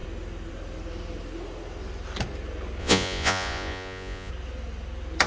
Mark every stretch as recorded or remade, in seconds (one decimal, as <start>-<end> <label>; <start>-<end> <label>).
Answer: 0.0-2.8 recorded; 2.8-4.3 remade; 4.3-5.3 recorded